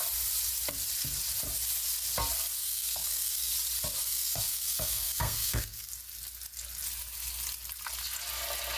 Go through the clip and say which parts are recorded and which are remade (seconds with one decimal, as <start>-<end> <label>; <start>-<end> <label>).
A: 0.0-2.6 recorded; 2.6-3.5 remade; 3.5-4.0 recorded; 4.0-5.9 remade; 5.9-8.8 recorded